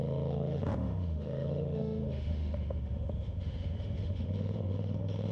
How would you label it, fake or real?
fake